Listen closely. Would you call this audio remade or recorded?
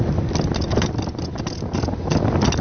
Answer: recorded